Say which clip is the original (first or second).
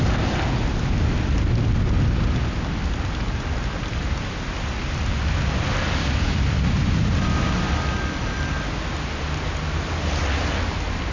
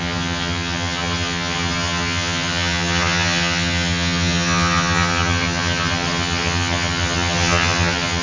first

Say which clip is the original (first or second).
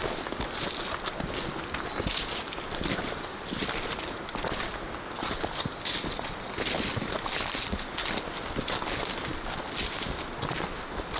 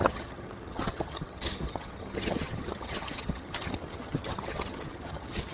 first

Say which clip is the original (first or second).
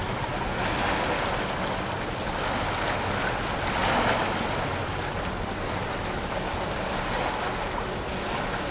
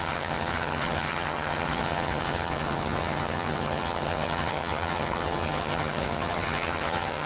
first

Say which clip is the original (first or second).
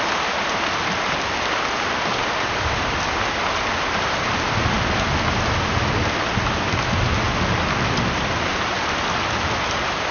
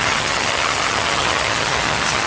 first